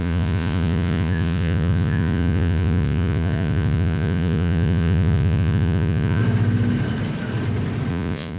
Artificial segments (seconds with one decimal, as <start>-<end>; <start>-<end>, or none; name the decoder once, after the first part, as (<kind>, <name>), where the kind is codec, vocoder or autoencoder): 0.0-6.2 (vocoder, Vocos); 7.9-8.4